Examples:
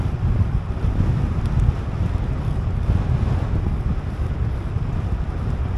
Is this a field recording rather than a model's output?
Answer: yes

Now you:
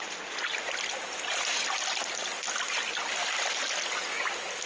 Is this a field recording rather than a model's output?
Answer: yes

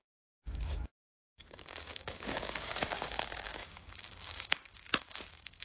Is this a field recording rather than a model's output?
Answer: no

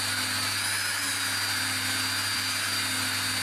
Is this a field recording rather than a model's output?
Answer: no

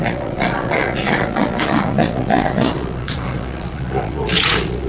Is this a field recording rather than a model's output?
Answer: no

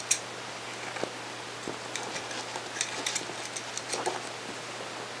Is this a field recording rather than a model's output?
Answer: yes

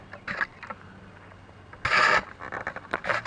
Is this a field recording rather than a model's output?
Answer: yes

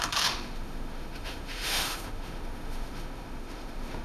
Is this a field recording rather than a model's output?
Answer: no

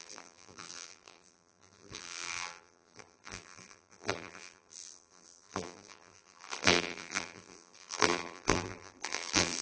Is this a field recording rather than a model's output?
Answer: no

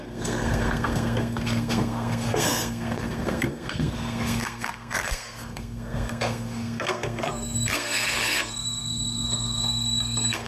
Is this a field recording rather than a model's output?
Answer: no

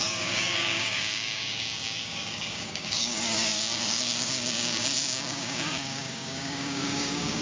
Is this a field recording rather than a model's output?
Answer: no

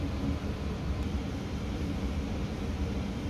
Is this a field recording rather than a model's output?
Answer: no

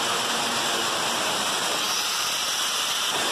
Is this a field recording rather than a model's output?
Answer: no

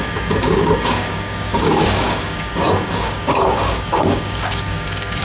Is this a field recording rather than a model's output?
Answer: no